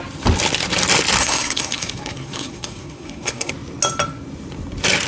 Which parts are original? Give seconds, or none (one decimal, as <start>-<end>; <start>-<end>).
0.0-1.2; 3.5-5.1